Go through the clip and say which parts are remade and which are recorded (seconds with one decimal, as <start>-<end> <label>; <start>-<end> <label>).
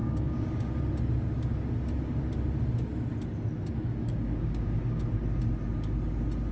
0.0-0.8 remade; 0.8-3.8 recorded; 3.8-5.1 remade; 5.1-6.5 recorded